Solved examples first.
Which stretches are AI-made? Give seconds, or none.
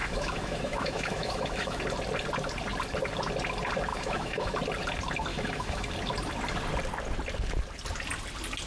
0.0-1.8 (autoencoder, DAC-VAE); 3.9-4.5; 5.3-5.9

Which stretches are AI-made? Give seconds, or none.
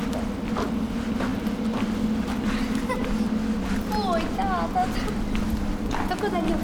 none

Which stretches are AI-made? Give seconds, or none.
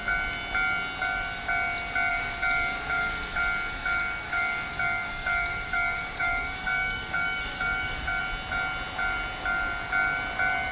2.1-3.1 (codec, DAC); 3.8-8.2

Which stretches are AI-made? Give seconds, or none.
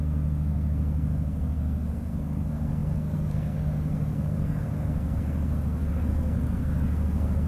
0.0-7.5 (codec, SNAC)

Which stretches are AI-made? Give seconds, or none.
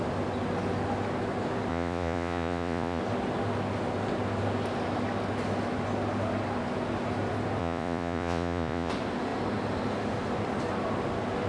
1.7-3.0 (vocoder, Vocos); 7.6-8.9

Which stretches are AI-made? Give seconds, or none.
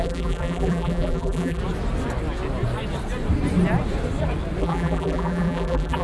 0.0-1.6 (vocoder, BigVGAN v2); 4.6-6.0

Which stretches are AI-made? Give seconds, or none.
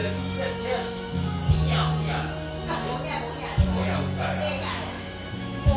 0.0-1.4 (autoencoder, DAC-VAE); 4.6-5.8